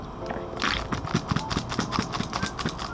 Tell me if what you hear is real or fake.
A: real